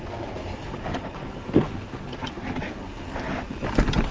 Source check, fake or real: real